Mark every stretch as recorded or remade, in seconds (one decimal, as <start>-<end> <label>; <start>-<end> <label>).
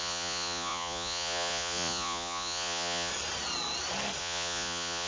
0.0-3.1 remade; 3.1-4.2 recorded; 4.2-5.1 remade